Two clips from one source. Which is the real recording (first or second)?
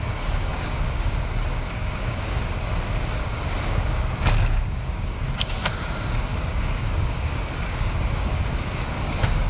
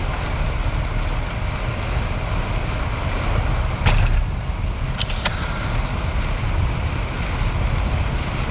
second